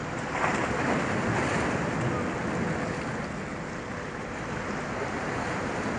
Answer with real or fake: real